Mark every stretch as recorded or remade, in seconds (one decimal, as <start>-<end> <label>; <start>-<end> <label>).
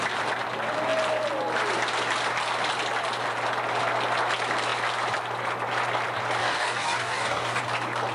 0.0-6.4 recorded; 6.4-7.6 remade; 7.6-8.1 recorded